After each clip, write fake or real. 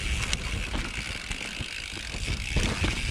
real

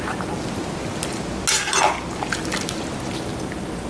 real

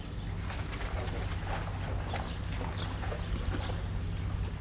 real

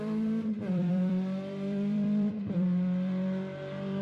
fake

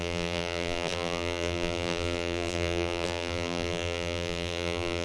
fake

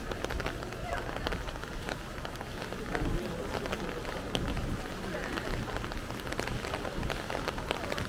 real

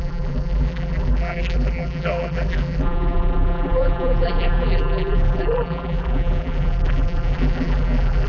fake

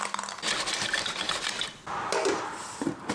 real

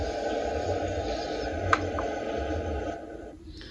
real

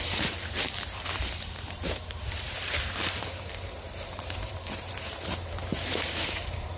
fake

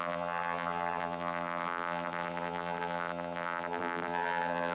fake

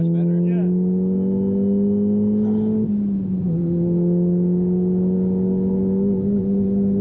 real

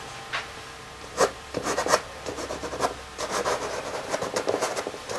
fake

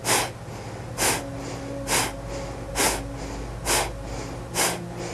real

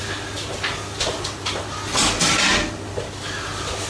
real